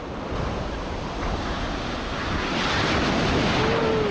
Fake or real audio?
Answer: real